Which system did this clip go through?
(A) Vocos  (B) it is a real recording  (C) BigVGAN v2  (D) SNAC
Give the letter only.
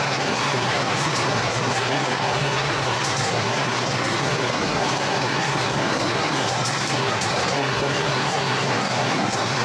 D